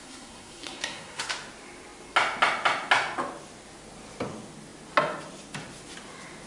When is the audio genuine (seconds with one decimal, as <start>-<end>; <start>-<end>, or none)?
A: 1.3-6.5